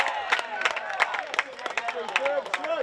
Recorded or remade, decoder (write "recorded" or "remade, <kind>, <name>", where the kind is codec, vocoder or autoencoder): recorded